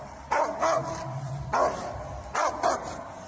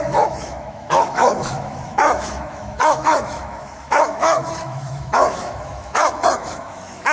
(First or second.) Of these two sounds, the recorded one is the first